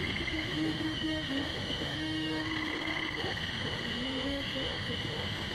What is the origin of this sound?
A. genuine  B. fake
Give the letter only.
B